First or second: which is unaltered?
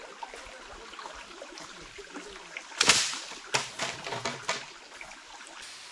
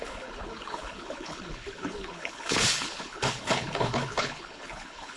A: first